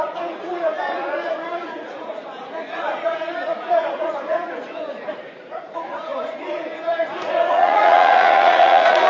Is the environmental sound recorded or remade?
remade